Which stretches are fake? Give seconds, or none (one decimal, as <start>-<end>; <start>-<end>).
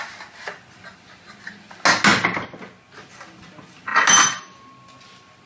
none